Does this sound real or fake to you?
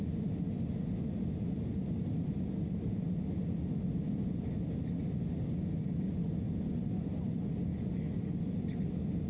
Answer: real